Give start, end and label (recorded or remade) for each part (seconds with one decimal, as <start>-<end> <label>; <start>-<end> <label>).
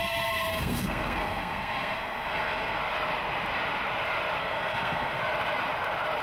0.0-0.5 recorded; 0.5-2.8 remade; 2.8-4.4 recorded; 4.4-5.2 remade; 5.2-6.2 recorded